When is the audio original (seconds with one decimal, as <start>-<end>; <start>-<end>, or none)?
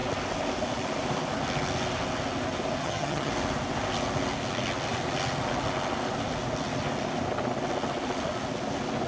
0.0-2.8; 3.3-9.1